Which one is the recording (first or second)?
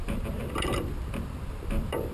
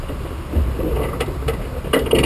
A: second